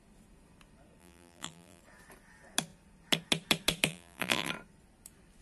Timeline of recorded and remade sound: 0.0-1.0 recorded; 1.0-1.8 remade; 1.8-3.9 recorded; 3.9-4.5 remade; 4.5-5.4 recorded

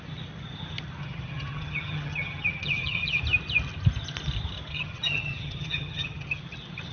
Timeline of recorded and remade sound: 0.0-1.0 recorded; 1.0-3.2 remade; 3.2-4.7 recorded; 4.7-6.4 remade; 6.4-6.9 recorded